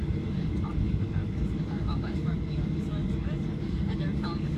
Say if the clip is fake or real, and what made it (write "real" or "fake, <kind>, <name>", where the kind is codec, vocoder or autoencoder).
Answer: fake, codec, DAC